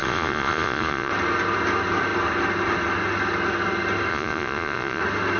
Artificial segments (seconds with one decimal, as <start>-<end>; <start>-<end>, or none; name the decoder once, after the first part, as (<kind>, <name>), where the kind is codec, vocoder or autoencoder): 0.0-1.1 (vocoder, Vocos); 4.1-5.0